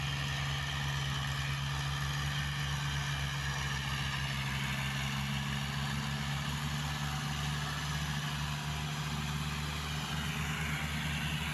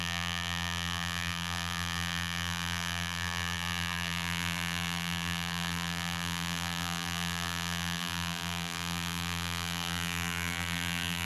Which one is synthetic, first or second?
second